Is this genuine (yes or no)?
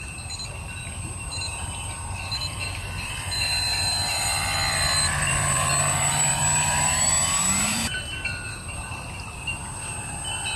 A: no